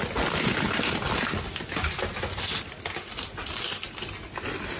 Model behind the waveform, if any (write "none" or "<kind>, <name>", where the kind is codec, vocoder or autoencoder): none